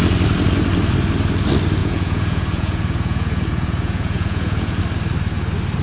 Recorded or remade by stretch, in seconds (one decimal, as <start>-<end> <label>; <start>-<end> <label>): 0.0-1.8 recorded; 1.8-4.8 remade; 4.8-5.8 recorded